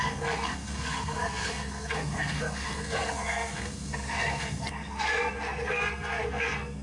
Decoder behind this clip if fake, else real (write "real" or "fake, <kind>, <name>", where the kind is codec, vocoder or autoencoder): fake, codec, SNAC